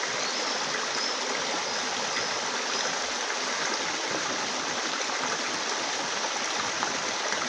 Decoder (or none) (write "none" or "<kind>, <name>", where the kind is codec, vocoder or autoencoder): none